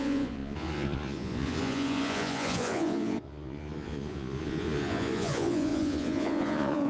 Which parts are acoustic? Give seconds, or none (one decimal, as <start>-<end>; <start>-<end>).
none

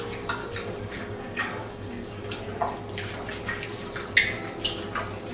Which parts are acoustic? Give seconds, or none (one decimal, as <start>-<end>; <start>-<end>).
0.0-0.4; 2.4-5.3

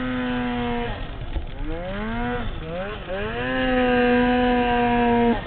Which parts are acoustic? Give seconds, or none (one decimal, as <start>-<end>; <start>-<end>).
0.0-5.5

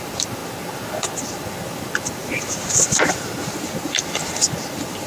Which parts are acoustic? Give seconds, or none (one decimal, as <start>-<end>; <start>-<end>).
0.0-5.1

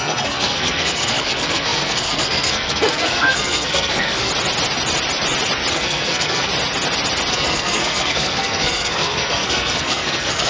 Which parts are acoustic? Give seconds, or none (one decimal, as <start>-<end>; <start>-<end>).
4.3-5.7; 6.5-7.3

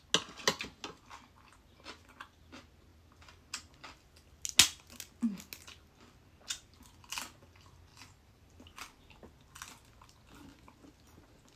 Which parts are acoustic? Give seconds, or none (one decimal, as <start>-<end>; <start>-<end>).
0.0-7.9; 9.0-11.6

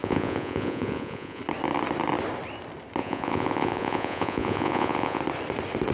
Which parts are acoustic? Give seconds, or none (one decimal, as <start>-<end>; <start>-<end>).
1.4-3.0; 5.2-5.9